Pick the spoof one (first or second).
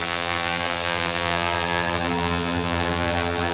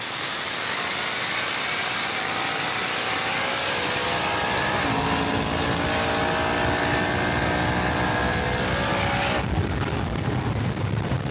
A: first